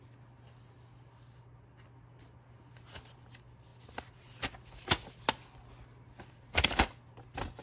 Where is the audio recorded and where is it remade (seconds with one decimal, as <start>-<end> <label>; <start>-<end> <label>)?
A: 0.0-7.6 recorded